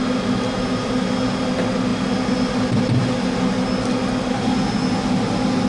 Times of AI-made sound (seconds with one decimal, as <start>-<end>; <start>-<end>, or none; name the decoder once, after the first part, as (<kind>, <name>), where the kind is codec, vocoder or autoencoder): none